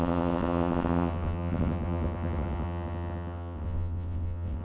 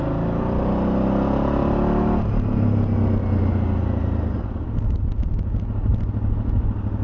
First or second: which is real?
second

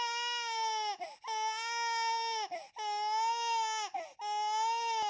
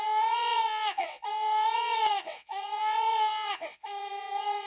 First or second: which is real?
first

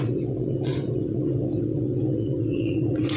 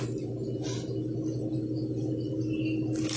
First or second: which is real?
second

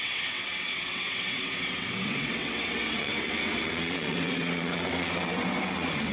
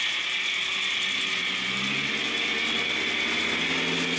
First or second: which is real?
second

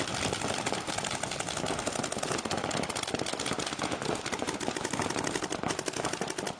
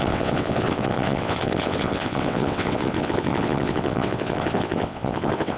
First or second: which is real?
first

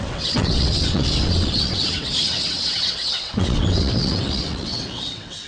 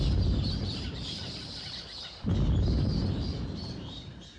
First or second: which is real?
second